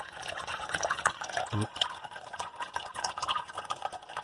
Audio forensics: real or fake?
fake